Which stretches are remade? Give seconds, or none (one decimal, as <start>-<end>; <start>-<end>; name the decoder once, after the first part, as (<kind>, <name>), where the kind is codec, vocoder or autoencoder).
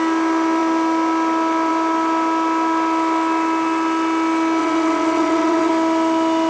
4.6-5.7 (vocoder, WaveNeXt)